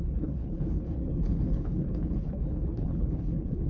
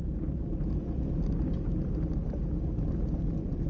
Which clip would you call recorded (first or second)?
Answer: second